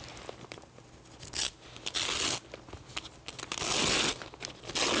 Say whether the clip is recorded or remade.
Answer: recorded